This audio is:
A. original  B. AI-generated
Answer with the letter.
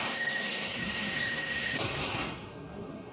B